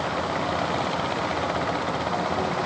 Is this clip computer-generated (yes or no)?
no